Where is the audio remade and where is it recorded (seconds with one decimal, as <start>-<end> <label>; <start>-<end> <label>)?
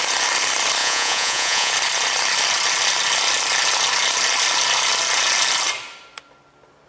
0.0-0.8 recorded; 0.8-1.7 remade; 1.7-6.9 recorded